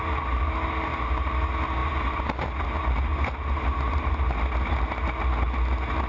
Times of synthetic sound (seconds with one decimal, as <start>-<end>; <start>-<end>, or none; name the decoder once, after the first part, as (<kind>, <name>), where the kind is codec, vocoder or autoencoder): none